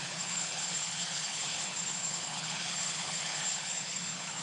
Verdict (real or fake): fake